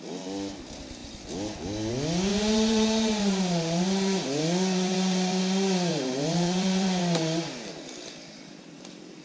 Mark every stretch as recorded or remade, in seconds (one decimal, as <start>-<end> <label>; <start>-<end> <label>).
0.0-2.3 recorded; 2.3-5.4 remade; 5.4-5.9 recorded; 5.9-7.0 remade; 7.0-9.2 recorded